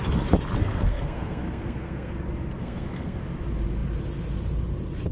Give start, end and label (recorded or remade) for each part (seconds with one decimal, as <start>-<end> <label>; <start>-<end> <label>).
0.0-0.7 recorded; 0.7-2.1 remade; 2.1-2.6 recorded; 2.6-3.2 remade; 3.2-5.1 recorded